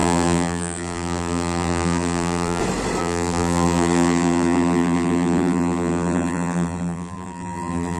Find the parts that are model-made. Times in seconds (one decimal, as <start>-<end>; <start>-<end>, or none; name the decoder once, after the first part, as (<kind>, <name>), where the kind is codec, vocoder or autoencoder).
0.0-2.6 (vocoder, BigVGAN v2); 3.0-8.0